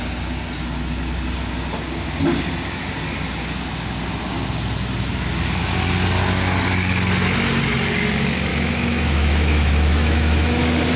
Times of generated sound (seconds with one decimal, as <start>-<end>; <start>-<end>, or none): 8.5-10.6